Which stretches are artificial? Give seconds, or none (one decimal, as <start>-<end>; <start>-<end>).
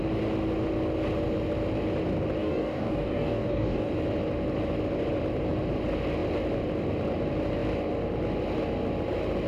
2.4-3.9